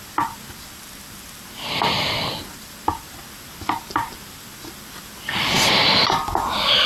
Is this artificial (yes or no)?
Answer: no